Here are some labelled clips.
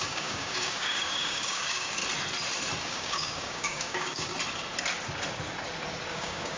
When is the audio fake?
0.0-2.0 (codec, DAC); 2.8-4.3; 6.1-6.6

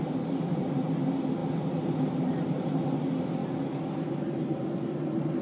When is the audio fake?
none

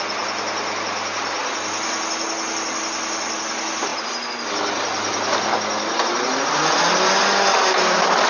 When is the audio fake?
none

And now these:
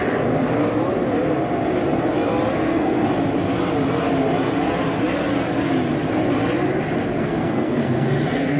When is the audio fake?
2.5-3.0 (codec, SNAC); 7.1-8.6